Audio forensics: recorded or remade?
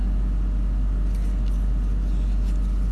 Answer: recorded